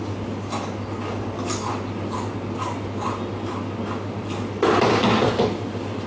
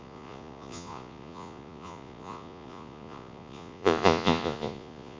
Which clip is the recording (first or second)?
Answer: first